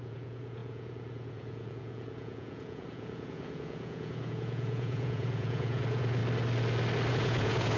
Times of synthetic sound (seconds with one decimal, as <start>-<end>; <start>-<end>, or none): 0.0-6.2; 7.1-7.8